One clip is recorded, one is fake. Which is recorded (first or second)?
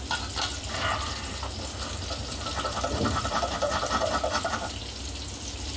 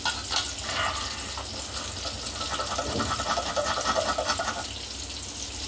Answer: second